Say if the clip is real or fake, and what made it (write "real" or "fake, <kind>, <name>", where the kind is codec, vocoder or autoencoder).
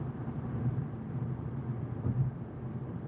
real